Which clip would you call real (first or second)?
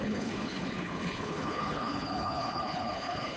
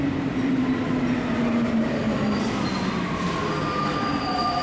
second